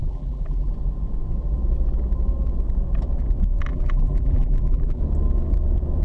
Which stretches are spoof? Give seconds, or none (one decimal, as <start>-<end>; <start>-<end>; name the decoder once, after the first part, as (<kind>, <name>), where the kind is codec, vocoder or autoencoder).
0.0-0.7 (vocoder, BigVGAN v2); 3.7-5.0